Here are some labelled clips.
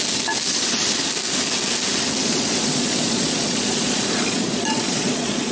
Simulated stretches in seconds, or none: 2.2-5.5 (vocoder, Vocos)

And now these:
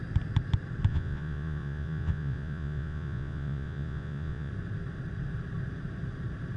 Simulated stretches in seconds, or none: 0.9-4.5 (vocoder, Vocos)

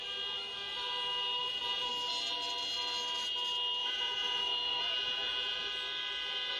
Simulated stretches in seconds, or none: 1.4-1.9 (vocoder, Vocos); 3.8-5.7

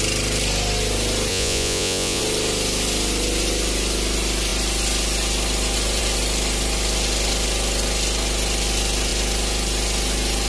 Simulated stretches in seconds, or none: 1.3-2.2 (vocoder, Vocos)

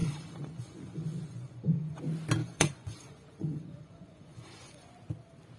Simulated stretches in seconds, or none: 0.0-2.0 (vocoder, Vocos); 2.4-4.9

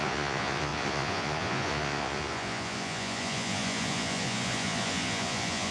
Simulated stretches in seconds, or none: 0.0-5.7 (vocoder, Vocos)

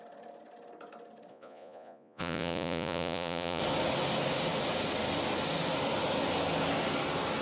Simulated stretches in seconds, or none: 1.3-3.6 (vocoder, Vocos)

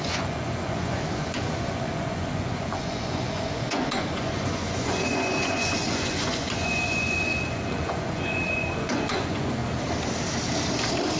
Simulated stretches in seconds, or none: 0.0-9.6 (vocoder, Vocos)